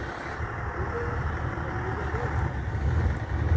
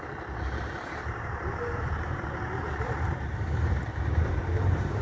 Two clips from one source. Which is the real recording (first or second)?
first